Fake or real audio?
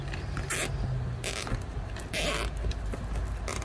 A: real